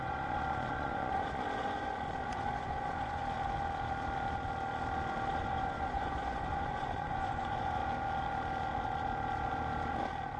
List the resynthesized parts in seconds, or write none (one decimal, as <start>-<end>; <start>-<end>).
0.0-3.2; 5.4-7.8